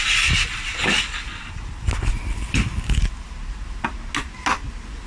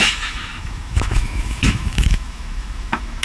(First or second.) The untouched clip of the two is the first